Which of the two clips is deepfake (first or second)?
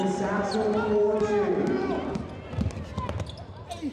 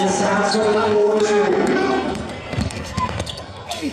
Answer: second